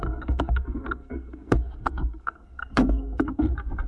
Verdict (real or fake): fake